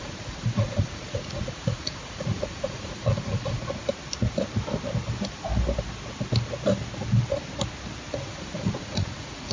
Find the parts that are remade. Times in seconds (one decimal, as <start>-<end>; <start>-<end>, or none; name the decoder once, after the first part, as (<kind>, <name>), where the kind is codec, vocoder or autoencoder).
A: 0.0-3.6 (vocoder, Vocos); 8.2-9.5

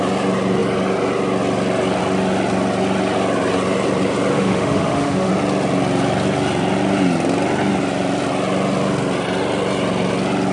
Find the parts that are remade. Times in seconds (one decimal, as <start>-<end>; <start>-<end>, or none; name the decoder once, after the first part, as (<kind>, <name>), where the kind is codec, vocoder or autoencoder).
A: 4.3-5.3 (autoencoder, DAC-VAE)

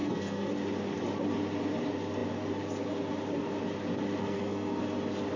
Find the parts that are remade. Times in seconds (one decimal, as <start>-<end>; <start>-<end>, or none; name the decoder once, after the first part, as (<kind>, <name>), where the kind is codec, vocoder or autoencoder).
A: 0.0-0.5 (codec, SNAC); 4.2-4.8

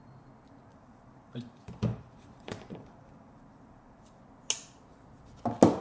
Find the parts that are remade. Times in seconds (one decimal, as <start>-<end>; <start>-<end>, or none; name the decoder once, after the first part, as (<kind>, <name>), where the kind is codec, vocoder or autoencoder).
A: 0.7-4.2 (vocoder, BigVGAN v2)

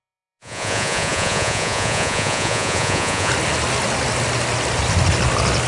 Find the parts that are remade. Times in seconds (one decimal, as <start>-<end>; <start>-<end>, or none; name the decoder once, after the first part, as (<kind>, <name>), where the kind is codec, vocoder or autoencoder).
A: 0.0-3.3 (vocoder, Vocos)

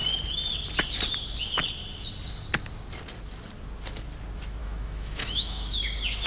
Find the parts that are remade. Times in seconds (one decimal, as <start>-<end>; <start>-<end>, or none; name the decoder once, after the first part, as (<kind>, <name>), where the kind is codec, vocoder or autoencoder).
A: 4.6-5.8 (autoencoder, DAC-VAE)

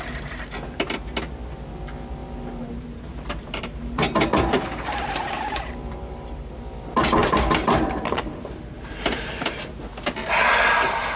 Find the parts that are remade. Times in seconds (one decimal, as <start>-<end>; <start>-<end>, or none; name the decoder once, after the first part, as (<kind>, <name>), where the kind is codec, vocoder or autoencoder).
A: 2.2-6.3 (vocoder, BigVGAN v2); 7.2-9.6